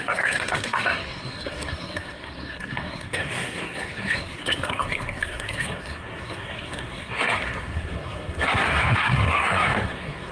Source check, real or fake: fake